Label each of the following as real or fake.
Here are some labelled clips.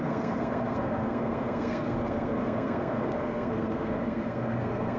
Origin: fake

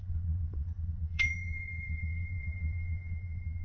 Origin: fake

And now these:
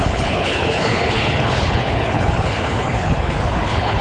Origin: fake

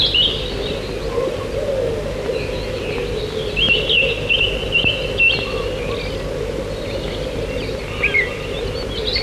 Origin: real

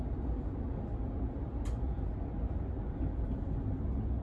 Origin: real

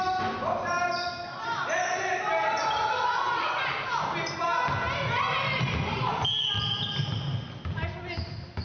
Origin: real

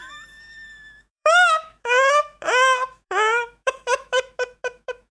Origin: fake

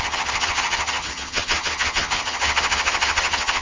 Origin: fake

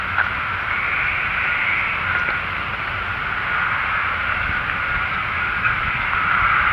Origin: real